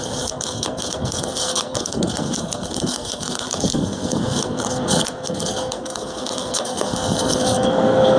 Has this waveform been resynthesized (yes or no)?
yes